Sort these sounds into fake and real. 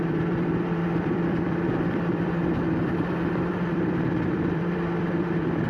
fake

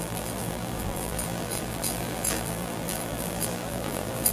fake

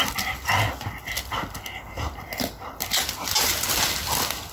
real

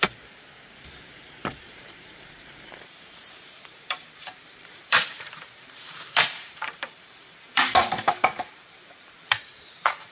fake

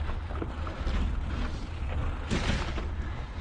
real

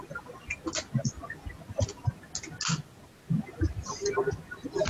real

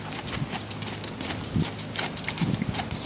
real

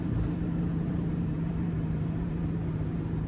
fake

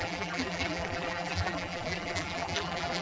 fake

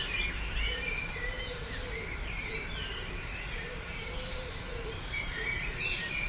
fake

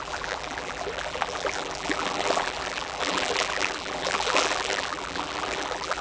fake